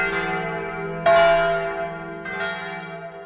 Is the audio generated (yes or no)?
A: no